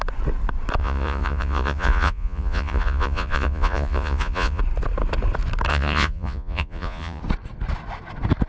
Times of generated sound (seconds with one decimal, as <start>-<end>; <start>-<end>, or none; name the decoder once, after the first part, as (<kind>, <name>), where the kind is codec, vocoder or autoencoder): 0.8-4.6 (vocoder, Vocos); 5.7-7.2